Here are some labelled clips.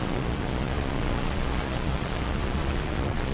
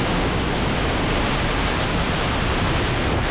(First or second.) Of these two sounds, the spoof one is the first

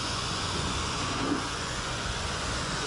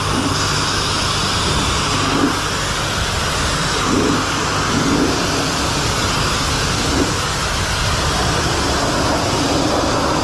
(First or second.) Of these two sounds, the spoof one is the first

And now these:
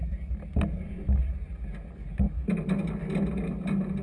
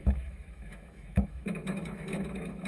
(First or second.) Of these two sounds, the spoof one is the second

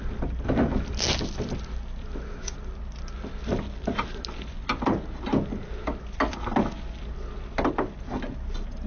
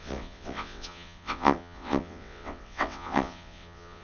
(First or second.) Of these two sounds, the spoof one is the second